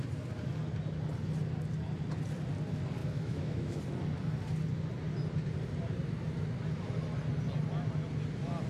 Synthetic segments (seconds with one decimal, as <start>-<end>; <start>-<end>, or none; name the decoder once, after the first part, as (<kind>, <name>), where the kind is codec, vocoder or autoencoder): 3.0-3.8 (autoencoder, DAC-VAE)